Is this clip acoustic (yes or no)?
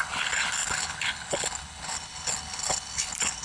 no